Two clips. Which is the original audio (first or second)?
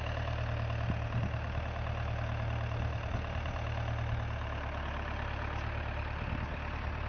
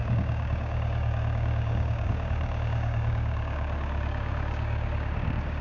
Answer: first